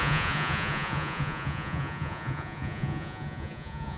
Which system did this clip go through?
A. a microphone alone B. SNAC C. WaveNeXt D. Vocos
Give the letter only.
D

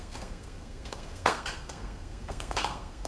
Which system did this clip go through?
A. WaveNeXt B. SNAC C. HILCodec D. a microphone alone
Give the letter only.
B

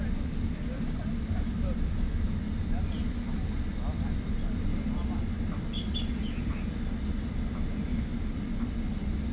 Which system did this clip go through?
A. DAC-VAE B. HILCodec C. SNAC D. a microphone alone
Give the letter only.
D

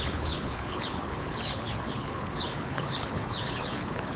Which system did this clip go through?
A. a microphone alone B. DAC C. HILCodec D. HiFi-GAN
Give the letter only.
C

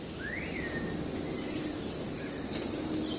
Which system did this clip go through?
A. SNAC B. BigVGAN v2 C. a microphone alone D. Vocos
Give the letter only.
C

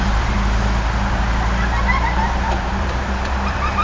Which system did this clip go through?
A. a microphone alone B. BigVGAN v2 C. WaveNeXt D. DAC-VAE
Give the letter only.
B